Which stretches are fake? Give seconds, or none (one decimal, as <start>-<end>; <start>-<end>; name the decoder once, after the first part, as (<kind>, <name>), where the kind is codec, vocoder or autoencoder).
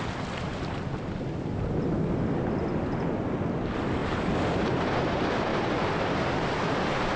4.0-4.8 (vocoder, BigVGAN v2)